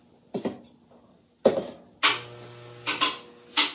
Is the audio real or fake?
real